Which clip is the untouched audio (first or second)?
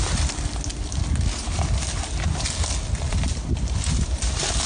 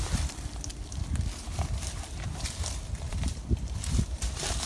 first